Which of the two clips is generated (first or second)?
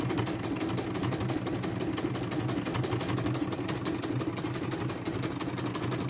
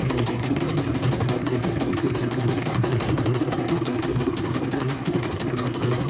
second